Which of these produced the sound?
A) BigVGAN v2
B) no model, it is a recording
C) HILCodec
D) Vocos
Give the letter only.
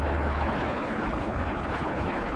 C